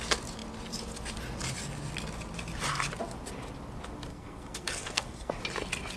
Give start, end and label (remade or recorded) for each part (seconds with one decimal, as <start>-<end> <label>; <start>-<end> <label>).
0.0-4.1 recorded; 4.1-5.4 remade; 5.4-6.0 recorded